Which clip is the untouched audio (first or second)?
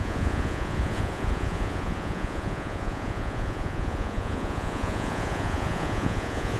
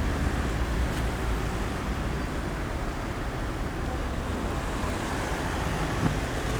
second